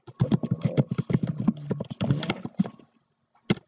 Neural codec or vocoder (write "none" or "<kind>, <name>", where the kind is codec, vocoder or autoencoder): none